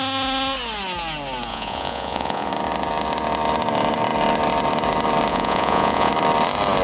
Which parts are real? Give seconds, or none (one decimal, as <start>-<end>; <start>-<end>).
0.0-1.5; 2.5-5.3; 6.1-6.8